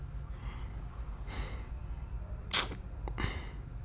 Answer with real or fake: real